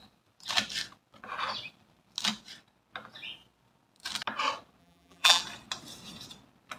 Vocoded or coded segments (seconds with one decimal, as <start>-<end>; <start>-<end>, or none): 4.8-5.4